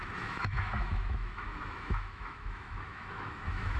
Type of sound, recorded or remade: remade